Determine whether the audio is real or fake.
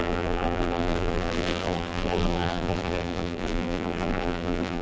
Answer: fake